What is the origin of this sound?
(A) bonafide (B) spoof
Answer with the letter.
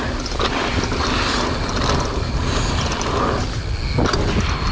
A